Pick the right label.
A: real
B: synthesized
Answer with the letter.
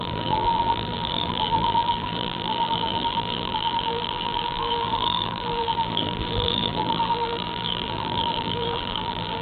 B